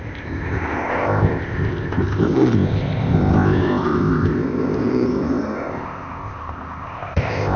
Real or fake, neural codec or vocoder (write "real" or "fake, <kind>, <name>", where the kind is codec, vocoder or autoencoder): fake, codec, ZipCodec